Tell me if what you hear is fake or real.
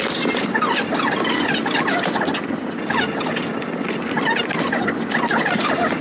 real